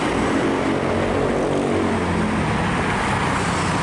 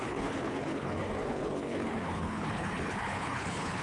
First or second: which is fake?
second